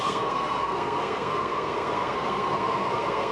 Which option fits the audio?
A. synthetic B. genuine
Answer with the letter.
A